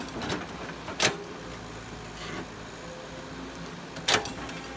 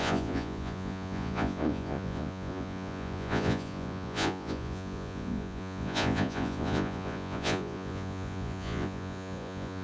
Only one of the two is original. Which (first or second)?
first